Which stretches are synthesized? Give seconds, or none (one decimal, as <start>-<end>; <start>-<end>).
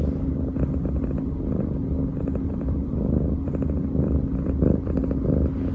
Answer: 2.1-4.5